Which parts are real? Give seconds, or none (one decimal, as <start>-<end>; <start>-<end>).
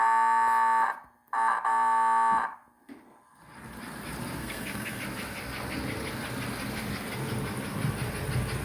0.0-4.4; 5.0-8.6